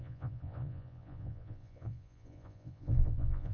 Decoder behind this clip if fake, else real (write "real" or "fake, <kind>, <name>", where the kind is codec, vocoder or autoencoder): fake, vocoder, Vocos